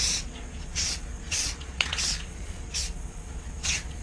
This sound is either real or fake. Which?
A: fake